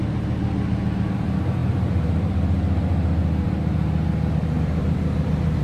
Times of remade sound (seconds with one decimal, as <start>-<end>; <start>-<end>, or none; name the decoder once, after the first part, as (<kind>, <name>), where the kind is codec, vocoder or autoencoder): 0.0-5.6 (vocoder, BigVGAN v2)